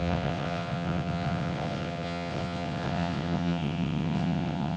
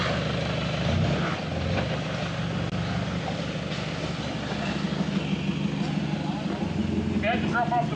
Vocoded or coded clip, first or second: first